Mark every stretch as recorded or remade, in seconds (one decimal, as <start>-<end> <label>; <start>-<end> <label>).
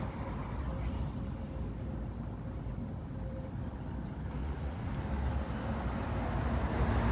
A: 0.0-4.4 recorded; 4.4-4.9 remade; 4.9-7.1 recorded